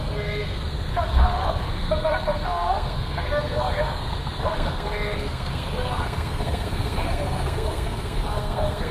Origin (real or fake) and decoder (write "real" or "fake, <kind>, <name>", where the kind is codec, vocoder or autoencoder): fake, codec, SNAC